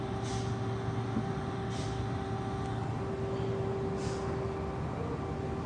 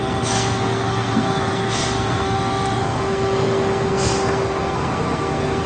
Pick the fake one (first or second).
second